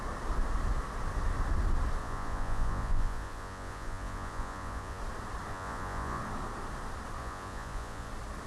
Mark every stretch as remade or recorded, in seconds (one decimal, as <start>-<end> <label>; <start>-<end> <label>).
0.0-2.0 recorded; 2.0-5.0 remade; 5.0-5.5 recorded; 5.5-6.2 remade; 6.2-7.2 recorded; 7.2-8.1 remade; 8.1-8.5 recorded